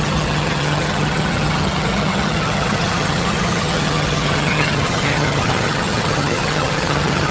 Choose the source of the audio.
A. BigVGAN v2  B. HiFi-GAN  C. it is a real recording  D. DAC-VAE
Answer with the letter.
B